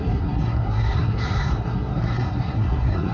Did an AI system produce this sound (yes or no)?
yes